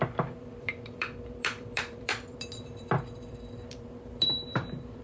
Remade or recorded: remade